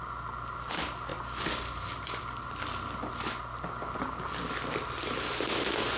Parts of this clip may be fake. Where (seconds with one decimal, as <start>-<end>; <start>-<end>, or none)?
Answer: none